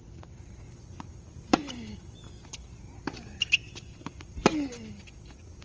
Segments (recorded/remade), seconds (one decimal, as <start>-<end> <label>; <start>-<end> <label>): 0.0-5.6 recorded